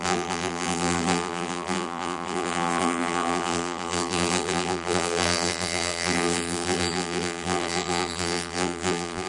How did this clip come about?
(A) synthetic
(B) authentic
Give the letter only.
A